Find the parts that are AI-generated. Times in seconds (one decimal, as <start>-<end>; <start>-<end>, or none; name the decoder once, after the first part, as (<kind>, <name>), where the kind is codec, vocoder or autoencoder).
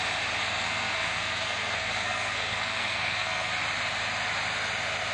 0.4-3.5 (codec, SNAC)